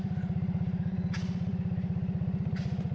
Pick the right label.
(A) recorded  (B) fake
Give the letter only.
B